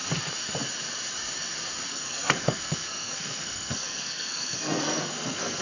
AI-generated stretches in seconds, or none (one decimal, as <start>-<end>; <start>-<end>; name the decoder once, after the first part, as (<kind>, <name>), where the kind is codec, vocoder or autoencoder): 1.9-5.6 (codec, SNAC)